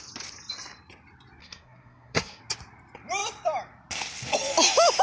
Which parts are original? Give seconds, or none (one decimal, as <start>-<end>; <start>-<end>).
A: 0.0-1.4; 2.4-5.0